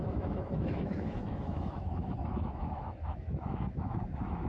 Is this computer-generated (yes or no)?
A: yes